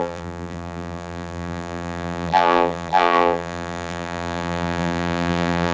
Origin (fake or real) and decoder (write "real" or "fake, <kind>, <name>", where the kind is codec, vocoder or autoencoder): fake, vocoder, BigVGAN v2